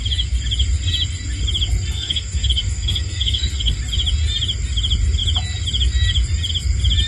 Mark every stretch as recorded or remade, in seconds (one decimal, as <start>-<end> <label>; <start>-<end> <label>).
0.0-1.9 recorded; 1.9-3.8 remade; 3.8-7.1 recorded